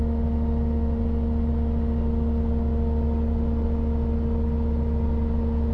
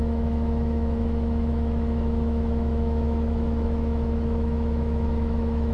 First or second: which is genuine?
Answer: first